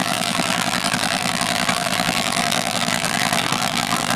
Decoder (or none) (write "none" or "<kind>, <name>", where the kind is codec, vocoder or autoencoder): vocoder, BigVGAN v2